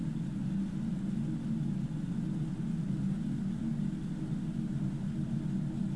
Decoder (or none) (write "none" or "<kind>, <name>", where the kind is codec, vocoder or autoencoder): none